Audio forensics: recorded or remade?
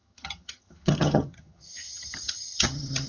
remade